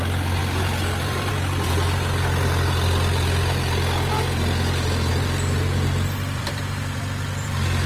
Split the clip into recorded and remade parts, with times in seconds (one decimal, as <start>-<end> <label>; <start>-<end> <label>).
0.0-0.4 recorded; 0.4-1.3 remade; 1.3-5.1 recorded; 5.1-7.9 remade